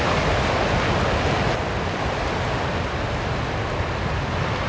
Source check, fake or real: real